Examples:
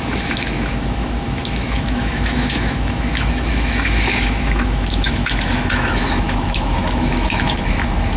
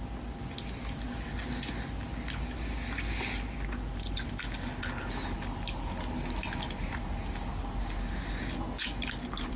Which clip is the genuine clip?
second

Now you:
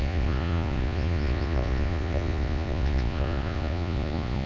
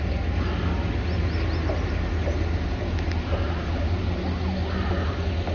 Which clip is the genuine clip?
second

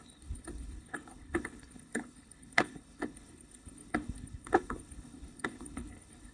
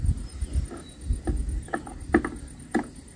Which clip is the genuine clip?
second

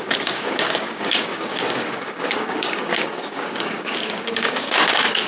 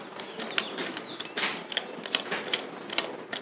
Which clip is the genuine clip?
second